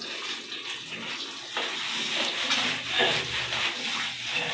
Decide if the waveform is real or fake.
real